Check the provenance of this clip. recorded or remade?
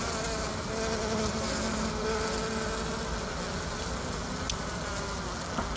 recorded